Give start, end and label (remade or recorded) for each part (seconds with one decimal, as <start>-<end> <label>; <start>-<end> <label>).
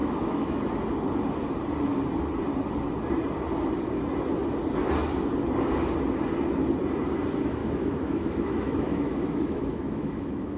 0.0-0.6 remade; 0.6-7.6 recorded; 7.6-10.6 remade